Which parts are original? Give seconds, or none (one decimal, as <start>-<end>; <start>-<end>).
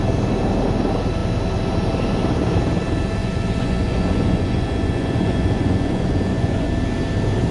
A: 0.0-3.2; 6.7-7.5